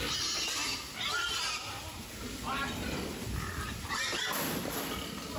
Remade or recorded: recorded